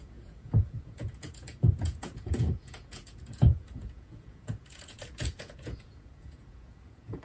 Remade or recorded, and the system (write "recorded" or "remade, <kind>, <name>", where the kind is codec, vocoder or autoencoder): remade, vocoder, Vocos